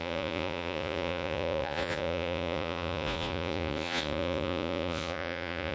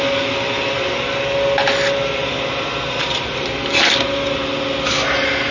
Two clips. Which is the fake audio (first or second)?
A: first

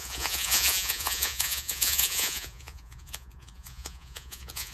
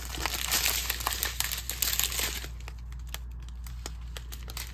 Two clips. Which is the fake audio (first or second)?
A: first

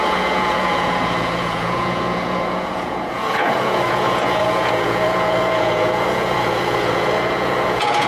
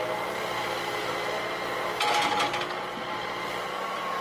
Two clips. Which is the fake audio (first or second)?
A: first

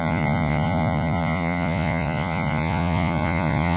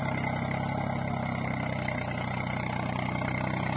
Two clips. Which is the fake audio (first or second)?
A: first